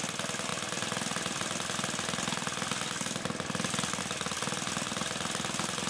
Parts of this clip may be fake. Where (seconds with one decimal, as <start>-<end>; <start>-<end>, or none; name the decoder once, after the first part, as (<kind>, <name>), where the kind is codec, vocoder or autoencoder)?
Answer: none